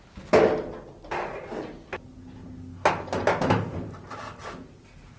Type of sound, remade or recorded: recorded